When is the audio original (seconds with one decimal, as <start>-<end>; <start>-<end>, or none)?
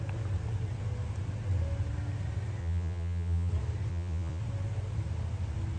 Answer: 0.0-2.6; 3.5-3.9; 4.4-5.8